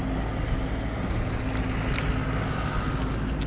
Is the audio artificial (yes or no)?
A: no